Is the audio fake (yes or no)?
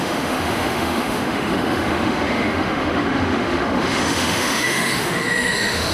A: yes